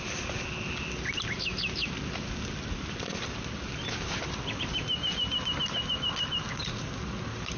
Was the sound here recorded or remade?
recorded